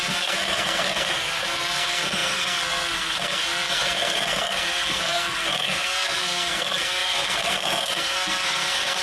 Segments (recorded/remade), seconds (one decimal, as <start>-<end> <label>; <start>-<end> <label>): 0.0-9.0 remade